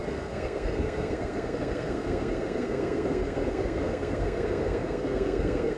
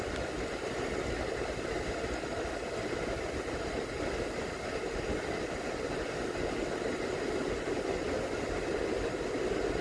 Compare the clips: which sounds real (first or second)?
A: second